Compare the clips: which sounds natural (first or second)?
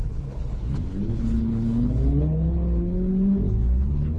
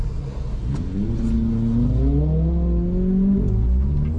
second